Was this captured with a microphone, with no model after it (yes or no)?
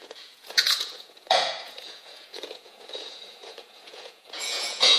no